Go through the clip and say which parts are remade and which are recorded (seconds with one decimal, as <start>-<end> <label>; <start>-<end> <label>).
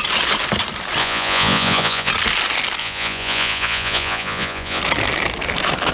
0.0-1.0 recorded; 1.0-2.1 remade; 2.1-2.8 recorded; 2.8-4.8 remade; 4.8-5.9 recorded